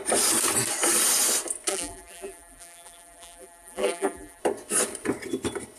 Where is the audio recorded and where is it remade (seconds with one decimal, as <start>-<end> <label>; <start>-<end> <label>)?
0.0-1.7 recorded; 1.7-4.4 remade; 4.4-5.8 recorded

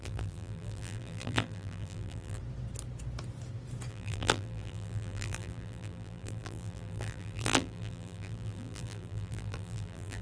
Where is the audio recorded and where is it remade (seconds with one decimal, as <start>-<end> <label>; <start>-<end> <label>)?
0.0-2.4 remade; 2.4-3.9 recorded; 3.9-10.2 remade

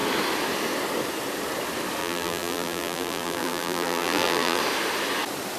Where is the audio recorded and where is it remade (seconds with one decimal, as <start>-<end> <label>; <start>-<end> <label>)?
0.0-2.0 recorded; 2.0-4.6 remade; 4.6-5.6 recorded

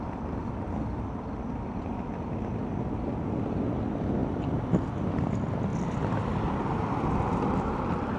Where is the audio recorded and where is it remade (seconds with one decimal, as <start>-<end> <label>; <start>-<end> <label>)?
0.0-4.2 recorded; 4.2-5.1 remade; 5.1-5.7 recorded; 5.7-6.3 remade; 6.3-8.2 recorded

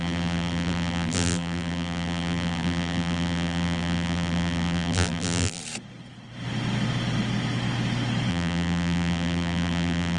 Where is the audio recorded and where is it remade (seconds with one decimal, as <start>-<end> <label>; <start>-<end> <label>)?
0.0-5.6 remade; 5.6-8.3 recorded; 8.3-10.2 remade

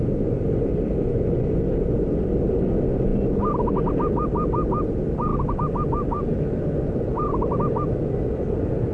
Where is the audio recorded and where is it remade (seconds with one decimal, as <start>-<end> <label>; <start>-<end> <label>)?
0.0-5.3 recorded; 5.3-7.6 remade; 7.6-8.9 recorded